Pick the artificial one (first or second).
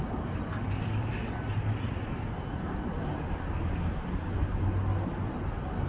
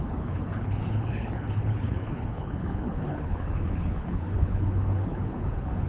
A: second